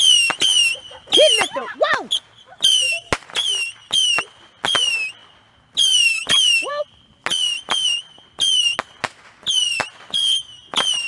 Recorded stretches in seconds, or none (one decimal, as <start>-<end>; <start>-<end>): 0.0-11.1